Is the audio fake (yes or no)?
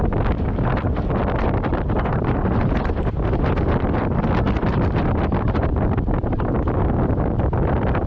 yes